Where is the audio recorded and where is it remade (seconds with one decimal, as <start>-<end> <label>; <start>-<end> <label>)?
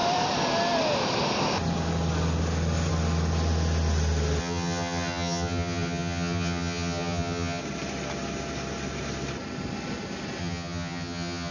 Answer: 0.0-4.4 recorded; 4.4-7.6 remade; 7.6-10.4 recorded; 10.4-11.5 remade